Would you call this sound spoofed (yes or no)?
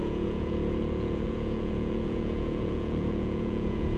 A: yes